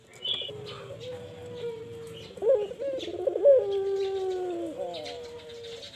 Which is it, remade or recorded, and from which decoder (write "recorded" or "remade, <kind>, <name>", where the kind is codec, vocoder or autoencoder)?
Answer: recorded